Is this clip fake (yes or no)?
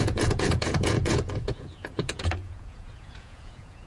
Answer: yes